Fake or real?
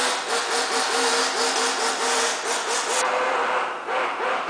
real